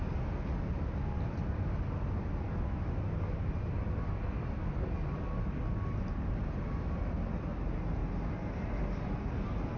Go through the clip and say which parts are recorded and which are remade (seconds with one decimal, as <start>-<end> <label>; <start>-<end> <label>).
0.0-9.8 recorded